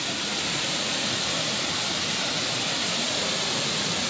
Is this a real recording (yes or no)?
yes